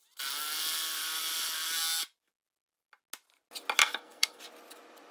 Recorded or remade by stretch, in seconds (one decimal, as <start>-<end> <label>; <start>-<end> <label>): 0.0-3.8 recorded; 3.8-4.4 remade; 4.4-5.1 recorded